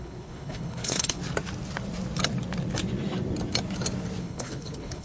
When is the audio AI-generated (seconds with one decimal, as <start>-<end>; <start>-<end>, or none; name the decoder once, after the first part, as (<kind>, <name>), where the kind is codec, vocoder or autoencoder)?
0.0-1.2 (codec, HILCodec); 4.2-5.0